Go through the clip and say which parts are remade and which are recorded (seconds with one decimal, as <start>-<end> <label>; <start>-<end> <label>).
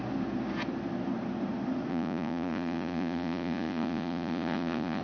0.0-1.9 recorded; 1.9-5.0 remade